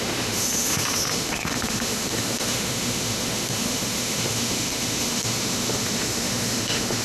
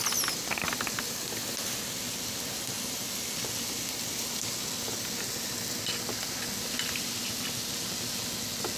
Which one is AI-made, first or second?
first